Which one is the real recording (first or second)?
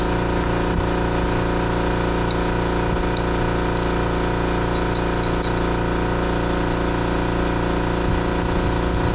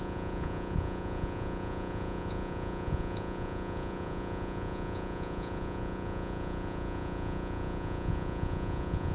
first